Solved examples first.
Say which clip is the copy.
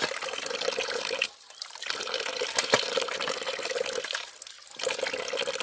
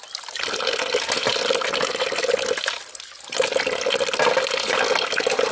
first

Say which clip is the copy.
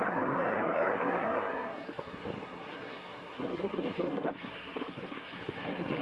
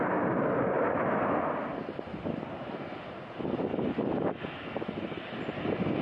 first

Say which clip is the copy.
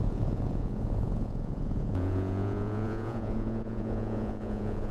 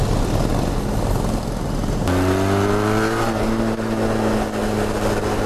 first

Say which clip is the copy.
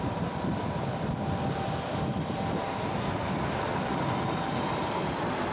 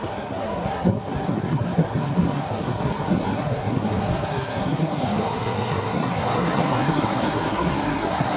second